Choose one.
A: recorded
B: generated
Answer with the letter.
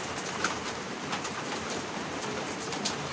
B